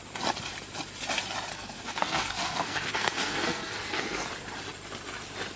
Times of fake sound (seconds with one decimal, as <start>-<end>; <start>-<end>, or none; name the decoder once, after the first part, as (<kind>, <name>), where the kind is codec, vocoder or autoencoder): 1.5-4.3 (codec, SNAC)